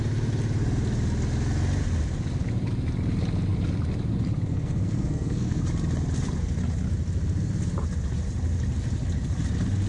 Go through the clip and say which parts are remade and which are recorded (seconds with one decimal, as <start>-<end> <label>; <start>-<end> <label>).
0.0-4.5 recorded; 4.5-5.6 remade; 5.6-9.9 recorded